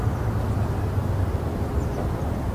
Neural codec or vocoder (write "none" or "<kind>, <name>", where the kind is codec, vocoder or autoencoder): none